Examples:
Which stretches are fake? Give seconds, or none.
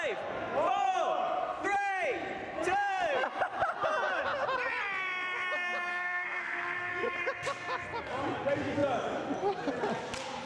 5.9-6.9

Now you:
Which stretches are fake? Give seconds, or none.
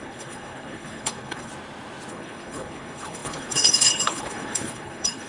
0.0-1.5; 2.1-5.3